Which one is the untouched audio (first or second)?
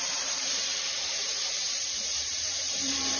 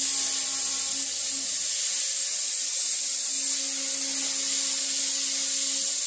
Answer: second